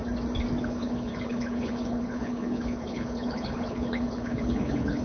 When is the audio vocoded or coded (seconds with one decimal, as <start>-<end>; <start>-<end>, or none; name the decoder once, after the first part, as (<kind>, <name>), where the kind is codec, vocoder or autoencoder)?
0.6-5.0 (codec, HILCodec)